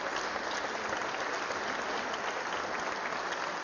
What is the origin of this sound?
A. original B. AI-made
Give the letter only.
A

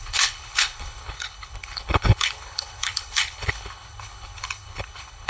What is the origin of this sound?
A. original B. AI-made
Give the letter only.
B